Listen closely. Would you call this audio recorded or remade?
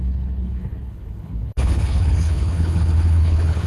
remade